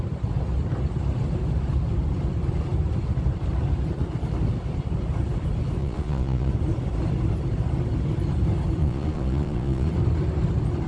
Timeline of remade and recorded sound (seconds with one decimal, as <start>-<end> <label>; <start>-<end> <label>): 0.0-5.8 recorded; 5.8-6.5 remade; 6.5-8.8 recorded; 8.8-9.9 remade; 9.9-10.9 recorded